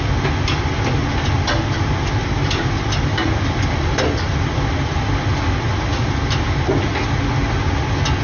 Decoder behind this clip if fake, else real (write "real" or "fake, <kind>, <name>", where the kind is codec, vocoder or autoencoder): real